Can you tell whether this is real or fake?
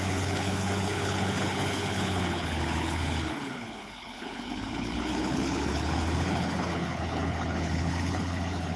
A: fake